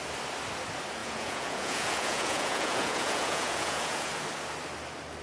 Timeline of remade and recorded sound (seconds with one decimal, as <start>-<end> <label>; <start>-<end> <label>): 0.0-1.0 recorded; 1.0-4.1 remade; 4.1-5.2 recorded